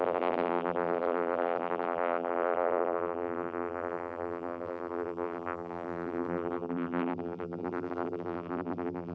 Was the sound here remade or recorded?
remade